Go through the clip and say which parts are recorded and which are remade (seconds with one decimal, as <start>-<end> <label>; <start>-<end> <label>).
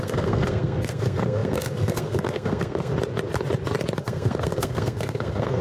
0.0-2.9 remade; 2.9-4.0 recorded; 4.0-5.6 remade